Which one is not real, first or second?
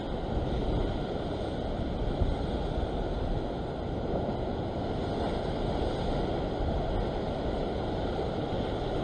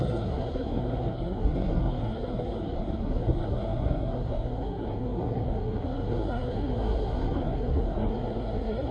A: second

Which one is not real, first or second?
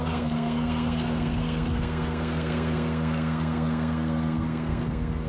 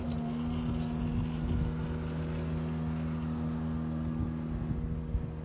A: first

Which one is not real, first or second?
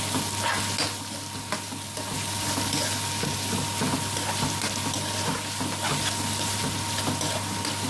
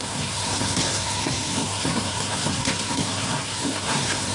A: second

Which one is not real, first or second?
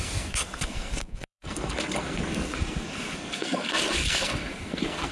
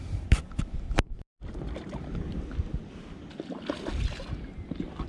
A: first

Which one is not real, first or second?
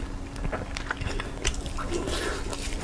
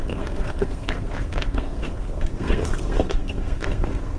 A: second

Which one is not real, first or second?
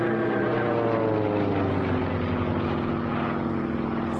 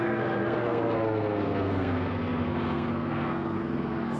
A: second